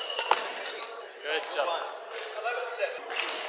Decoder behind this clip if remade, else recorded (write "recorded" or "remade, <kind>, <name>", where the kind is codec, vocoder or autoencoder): recorded